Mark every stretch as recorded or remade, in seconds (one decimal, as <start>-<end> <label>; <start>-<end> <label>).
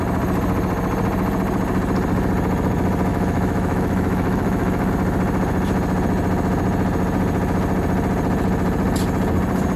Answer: 0.0-3.1 recorded; 3.1-4.9 remade; 4.9-9.8 recorded